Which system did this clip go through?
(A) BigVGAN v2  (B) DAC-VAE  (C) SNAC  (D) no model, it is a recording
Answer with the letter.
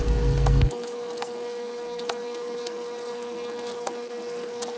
C